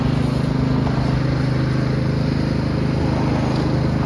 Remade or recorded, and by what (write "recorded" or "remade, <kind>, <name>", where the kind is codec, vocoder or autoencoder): recorded